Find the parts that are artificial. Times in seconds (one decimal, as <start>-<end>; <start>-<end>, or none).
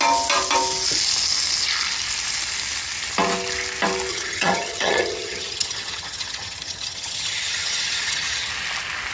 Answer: 4.1-8.5